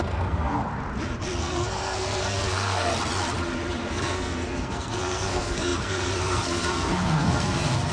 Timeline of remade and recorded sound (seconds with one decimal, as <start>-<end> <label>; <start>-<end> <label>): 0.0-0.6 remade; 0.6-1.4 recorded; 1.4-2.9 remade; 2.9-3.9 recorded; 3.9-7.9 remade